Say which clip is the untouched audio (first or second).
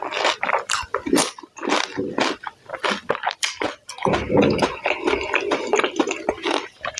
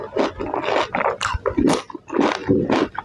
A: second